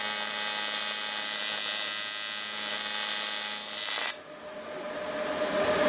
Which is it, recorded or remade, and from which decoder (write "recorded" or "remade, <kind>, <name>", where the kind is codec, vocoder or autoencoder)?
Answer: recorded